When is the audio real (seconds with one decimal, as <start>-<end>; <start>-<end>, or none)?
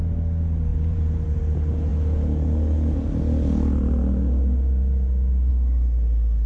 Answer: 0.0-0.7; 1.4-6.5